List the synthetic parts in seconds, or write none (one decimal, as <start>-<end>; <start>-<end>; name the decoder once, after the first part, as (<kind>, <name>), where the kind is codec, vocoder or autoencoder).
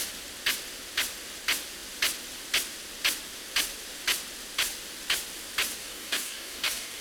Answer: 5.8-7.0 (codec, DAC)